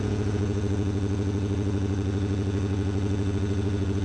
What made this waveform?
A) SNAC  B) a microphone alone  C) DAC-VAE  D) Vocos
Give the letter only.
D